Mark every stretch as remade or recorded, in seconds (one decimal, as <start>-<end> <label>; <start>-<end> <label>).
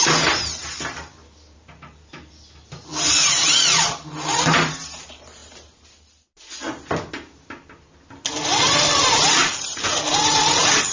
0.0-10.9 recorded